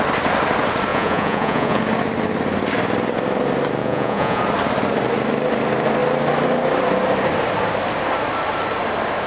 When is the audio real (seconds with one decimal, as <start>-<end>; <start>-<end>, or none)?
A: 0.0-0.9; 1.8-3.8; 4.4-9.3